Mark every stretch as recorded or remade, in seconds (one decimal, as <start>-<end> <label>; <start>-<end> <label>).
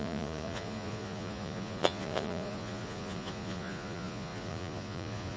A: 0.0-5.4 remade